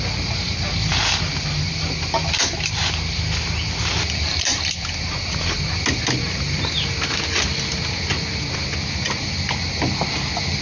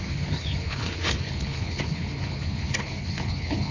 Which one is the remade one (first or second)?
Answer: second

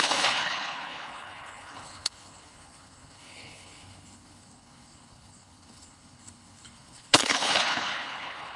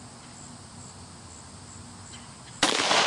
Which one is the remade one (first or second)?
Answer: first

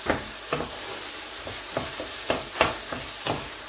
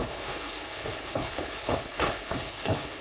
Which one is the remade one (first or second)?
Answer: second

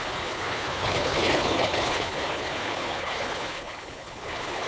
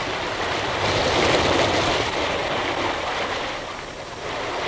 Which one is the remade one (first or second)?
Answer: first